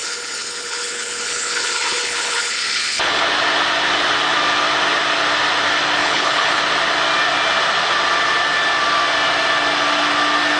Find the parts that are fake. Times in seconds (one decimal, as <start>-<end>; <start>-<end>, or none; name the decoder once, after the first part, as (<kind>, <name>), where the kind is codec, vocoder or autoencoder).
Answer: 0.0-3.2 (codec, HILCodec); 6.0-6.6